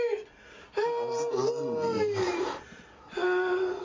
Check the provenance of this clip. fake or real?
real